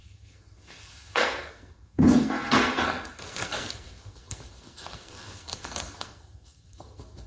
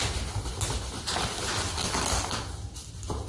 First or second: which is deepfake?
first